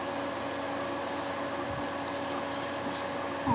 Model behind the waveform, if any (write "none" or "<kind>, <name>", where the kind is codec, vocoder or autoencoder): none